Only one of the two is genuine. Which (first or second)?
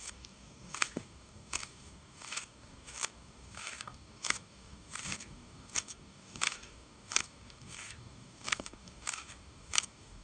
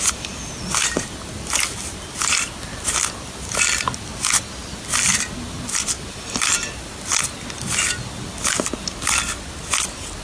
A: second